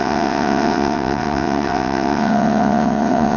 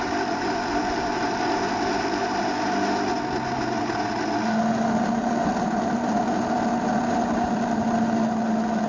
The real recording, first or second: second